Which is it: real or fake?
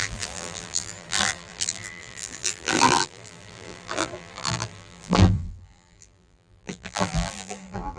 fake